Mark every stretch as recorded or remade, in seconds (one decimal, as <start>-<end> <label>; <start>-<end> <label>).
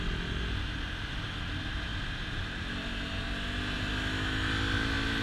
0.0-5.2 recorded